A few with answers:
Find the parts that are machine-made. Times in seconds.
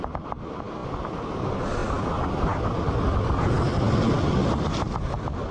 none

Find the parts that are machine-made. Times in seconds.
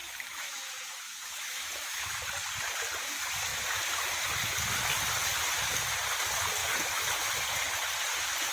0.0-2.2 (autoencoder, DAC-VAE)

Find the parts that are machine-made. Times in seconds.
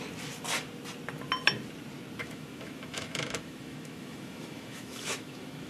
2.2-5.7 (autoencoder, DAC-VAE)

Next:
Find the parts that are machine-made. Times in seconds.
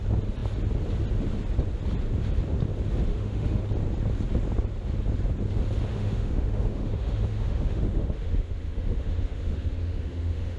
3.1-3.6 (autoencoder, DAC-VAE); 5.9-10.6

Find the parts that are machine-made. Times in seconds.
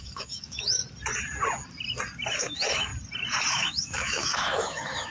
0.0-0.8 (autoencoder, DAC-VAE); 2.4-2.9; 3.5-5.1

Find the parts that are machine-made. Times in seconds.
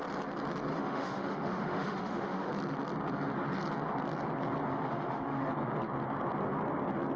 0.7-2.5 (autoencoder, DAC-VAE); 4.7-5.5